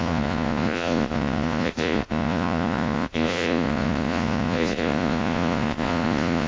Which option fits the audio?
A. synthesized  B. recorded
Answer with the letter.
A